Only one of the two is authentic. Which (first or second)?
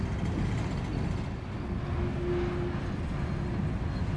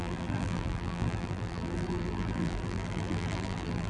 first